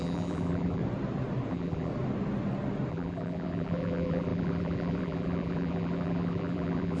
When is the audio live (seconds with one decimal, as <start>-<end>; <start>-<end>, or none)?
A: 0.8-1.5; 1.9-2.9

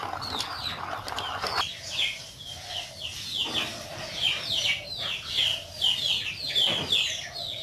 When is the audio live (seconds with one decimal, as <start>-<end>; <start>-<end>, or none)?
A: 0.0-4.1; 5.4-7.6

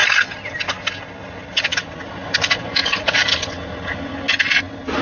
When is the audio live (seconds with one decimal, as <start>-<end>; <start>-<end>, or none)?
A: 0.0-2.8; 3.7-5.0

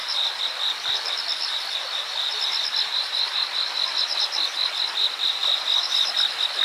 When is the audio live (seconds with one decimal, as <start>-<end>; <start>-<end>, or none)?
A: 0.7-6.6

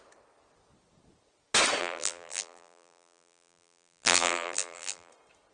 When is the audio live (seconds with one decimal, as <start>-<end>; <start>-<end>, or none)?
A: 0.0-1.8; 5.1-5.5

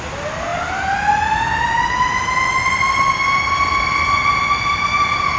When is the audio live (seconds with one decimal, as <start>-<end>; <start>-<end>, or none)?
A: 0.0-5.4

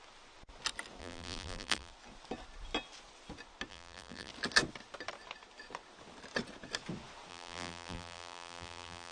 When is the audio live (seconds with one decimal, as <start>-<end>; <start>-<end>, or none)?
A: 0.0-1.0; 1.9-3.7; 4.3-7.3